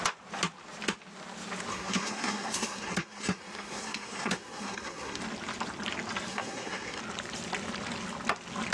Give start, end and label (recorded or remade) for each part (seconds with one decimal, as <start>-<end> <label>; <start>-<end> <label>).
0.0-1.7 recorded; 1.7-5.2 remade; 5.2-6.3 recorded; 6.3-7.0 remade; 7.0-8.7 recorded